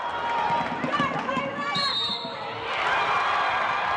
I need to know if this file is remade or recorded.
recorded